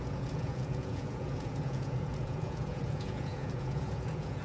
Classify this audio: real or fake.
fake